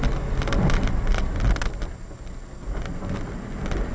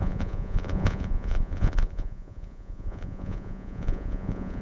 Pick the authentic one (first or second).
first